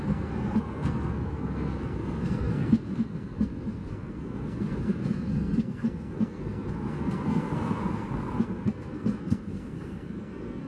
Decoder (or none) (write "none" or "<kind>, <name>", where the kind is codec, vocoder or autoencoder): codec, SNAC